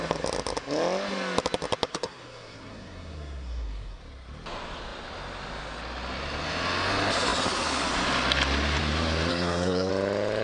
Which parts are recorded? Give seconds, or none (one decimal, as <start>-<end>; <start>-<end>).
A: 0.0-1.9; 4.0-9.3; 9.9-10.4